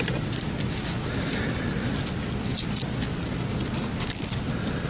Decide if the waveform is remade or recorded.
remade